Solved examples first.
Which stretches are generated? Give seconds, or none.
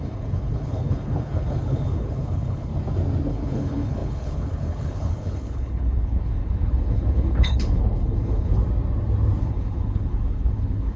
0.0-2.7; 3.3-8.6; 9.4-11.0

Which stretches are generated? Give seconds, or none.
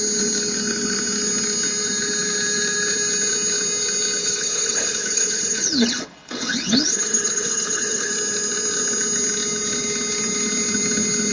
4.2-8.1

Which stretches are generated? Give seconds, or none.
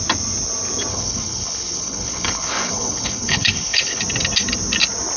0.9-4.0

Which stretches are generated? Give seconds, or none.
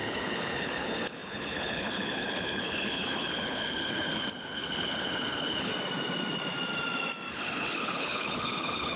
0.0-5.7; 7.3-9.0